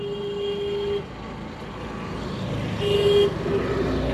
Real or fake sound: real